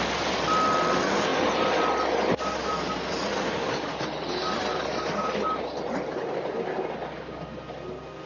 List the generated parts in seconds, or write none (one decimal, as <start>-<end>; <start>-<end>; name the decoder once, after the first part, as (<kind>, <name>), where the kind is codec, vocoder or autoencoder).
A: none